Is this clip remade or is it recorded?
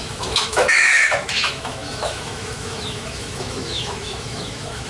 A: remade